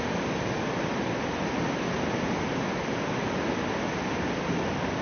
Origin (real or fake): real